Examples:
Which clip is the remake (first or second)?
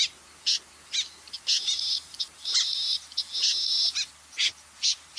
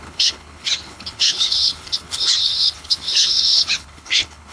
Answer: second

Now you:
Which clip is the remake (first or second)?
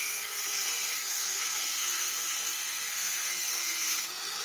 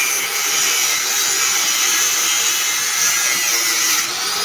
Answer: first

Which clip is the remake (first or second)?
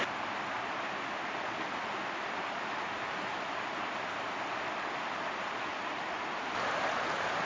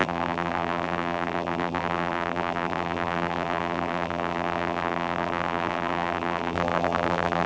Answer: second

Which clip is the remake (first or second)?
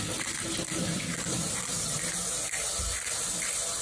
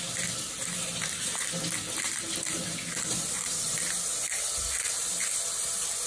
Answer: first